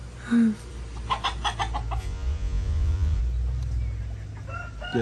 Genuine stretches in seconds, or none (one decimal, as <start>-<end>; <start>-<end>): 0.0-2.0; 3.2-5.0